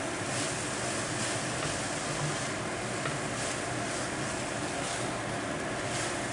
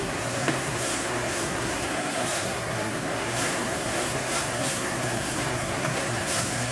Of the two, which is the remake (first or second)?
second